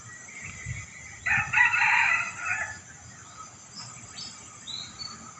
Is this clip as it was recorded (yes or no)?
yes